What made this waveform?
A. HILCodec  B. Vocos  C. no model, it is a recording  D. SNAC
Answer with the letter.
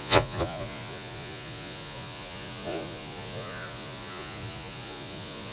B